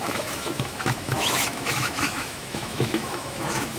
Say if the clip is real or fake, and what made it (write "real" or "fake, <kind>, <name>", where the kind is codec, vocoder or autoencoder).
fake, autoencoder, DAC-VAE